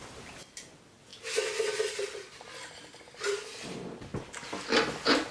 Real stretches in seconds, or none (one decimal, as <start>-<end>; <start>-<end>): 0.0-5.3